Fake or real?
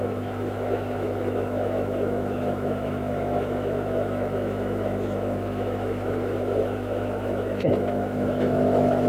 fake